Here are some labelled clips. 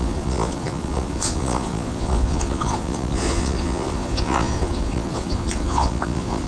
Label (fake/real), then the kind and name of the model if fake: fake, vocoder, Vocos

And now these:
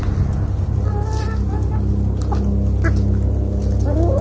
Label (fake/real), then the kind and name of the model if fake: real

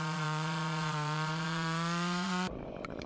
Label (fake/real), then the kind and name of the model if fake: fake, vocoder, Vocos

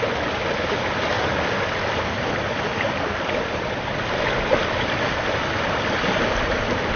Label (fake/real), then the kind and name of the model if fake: real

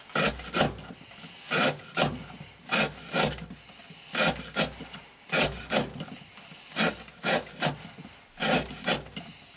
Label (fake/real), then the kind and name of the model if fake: real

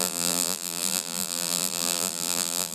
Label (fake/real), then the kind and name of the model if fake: fake, vocoder, BigVGAN v2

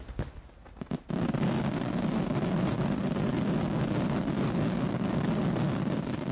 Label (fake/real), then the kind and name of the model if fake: real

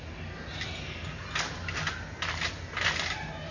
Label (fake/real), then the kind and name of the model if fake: real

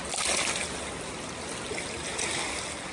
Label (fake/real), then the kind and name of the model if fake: real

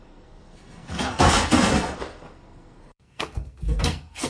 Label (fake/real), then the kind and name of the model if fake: fake, codec, SNAC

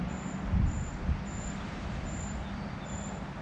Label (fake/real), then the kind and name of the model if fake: real